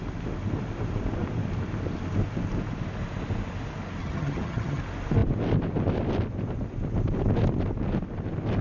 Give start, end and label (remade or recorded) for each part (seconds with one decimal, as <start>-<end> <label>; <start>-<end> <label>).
0.0-4.0 recorded; 4.0-4.8 remade; 4.8-8.6 recorded